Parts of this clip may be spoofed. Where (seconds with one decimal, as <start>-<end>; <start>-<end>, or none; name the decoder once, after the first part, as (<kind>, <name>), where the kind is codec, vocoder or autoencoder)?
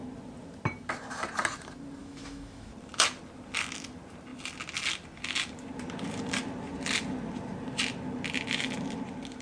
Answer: 2.0-2.7 (autoencoder, DAC-VAE)